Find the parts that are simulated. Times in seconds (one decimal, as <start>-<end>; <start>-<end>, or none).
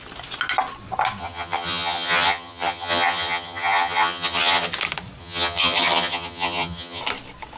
1.2-4.7; 5.2-7.0